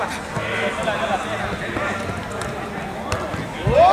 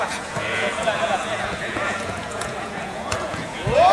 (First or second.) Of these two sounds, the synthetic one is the second